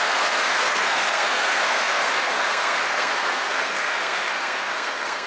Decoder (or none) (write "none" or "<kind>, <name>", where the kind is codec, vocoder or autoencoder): codec, SNAC